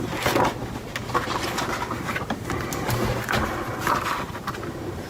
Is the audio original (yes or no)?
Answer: yes